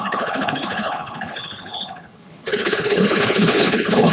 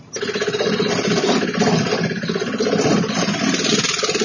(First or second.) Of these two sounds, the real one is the second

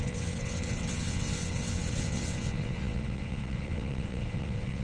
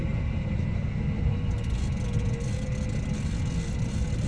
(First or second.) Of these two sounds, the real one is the second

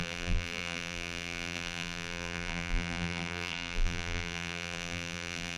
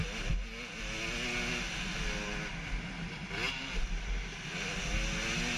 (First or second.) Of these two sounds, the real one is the second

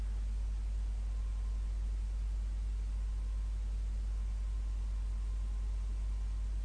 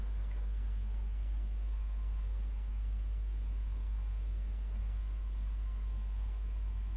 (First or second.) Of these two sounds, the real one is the first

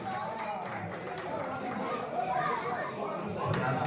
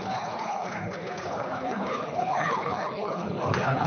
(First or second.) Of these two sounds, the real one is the first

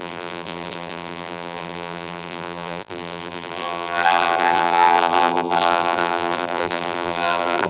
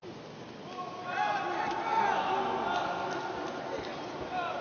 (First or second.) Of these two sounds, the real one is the second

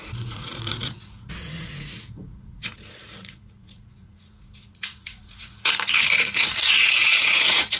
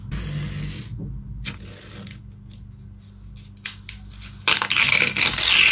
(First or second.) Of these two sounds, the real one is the second